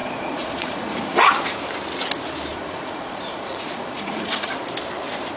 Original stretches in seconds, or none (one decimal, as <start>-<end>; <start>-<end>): 1.3-2.5; 4.5-5.4